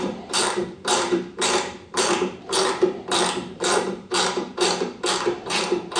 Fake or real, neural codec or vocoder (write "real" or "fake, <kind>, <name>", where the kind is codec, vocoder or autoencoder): fake, vocoder, BigVGAN v2